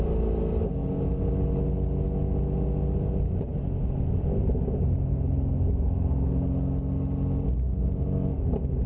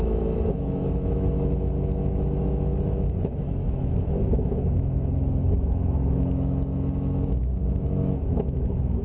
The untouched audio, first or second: first